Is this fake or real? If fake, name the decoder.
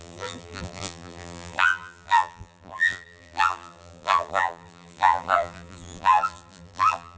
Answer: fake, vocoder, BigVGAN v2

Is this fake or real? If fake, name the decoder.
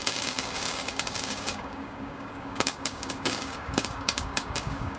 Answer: fake, codec, DAC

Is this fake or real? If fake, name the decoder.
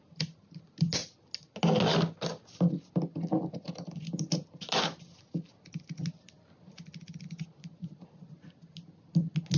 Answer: real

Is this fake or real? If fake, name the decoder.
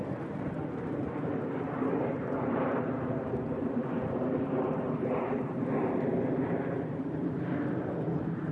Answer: fake, vocoder, BigVGAN v2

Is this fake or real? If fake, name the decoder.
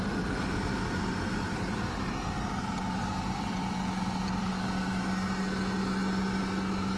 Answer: real